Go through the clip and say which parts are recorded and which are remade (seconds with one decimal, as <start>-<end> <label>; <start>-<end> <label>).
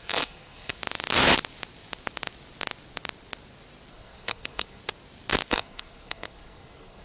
0.0-0.8 remade; 0.8-3.9 recorded; 3.9-4.8 remade; 4.8-5.5 recorded; 5.5-7.0 remade